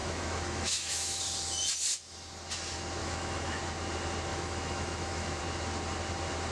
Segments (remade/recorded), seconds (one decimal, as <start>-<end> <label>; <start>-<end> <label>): 0.0-1.2 remade; 1.2-3.0 recorded; 3.0-3.6 remade; 3.6-4.3 recorded; 4.3-5.4 remade; 5.4-6.5 recorded